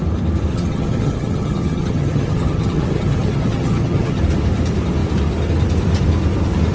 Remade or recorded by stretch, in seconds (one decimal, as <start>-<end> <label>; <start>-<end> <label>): 0.0-0.5 recorded; 0.5-4.2 remade; 4.2-6.7 recorded